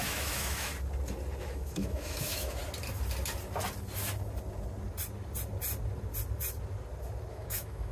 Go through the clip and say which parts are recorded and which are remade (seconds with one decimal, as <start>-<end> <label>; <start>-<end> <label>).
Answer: 0.0-0.7 remade; 0.7-1.4 recorded; 1.4-2.6 remade; 2.6-7.3 recorded; 7.3-7.9 remade